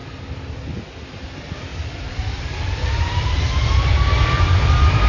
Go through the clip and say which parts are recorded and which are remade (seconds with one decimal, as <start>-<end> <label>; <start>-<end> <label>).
0.0-0.8 remade; 0.8-1.7 recorded; 1.7-5.1 remade